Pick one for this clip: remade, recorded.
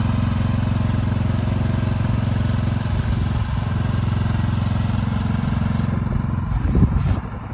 recorded